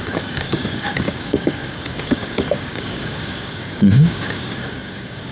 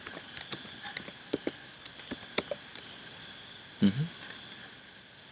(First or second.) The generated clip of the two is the first